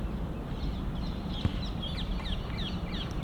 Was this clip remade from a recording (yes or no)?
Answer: yes